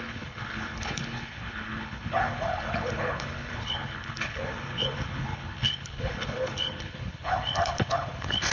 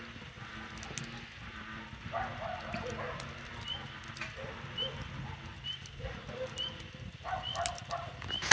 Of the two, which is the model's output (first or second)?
first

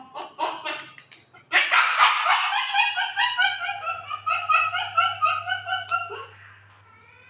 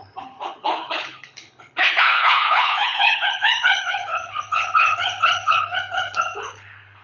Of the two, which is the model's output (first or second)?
second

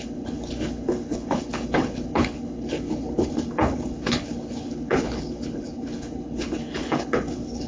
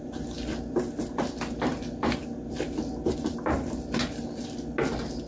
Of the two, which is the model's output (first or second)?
first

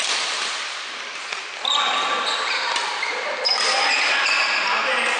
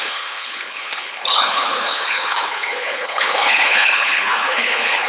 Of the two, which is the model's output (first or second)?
second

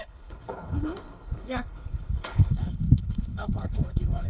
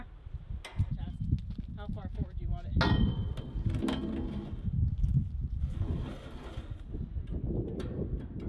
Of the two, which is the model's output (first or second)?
first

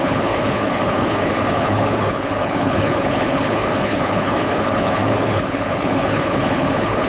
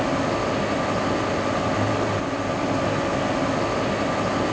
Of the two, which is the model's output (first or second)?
first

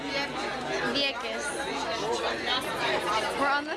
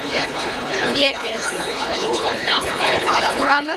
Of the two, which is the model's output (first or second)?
second